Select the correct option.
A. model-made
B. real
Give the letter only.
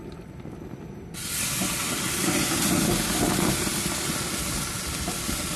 B